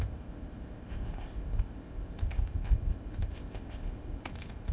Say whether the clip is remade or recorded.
remade